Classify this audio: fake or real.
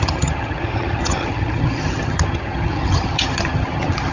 fake